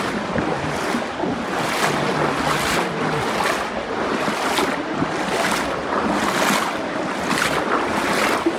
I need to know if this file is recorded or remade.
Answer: recorded